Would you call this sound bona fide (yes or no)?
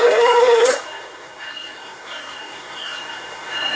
no